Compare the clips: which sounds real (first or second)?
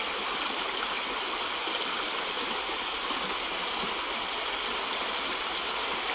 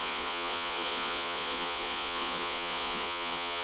first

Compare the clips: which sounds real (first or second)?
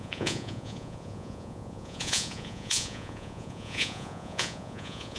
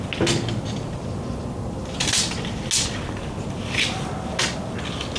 second